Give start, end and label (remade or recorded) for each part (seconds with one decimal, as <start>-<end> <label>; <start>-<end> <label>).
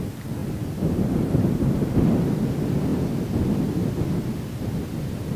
0.0-5.4 recorded